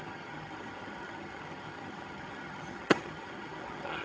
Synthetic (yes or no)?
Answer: yes